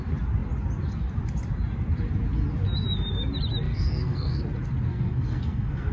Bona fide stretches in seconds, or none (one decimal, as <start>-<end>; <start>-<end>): 0.0-3.7; 4.4-4.9